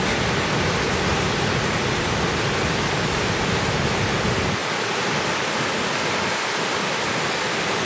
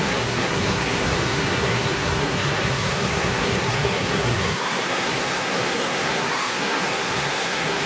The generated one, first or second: second